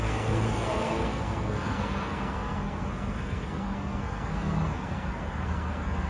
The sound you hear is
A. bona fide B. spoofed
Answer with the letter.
B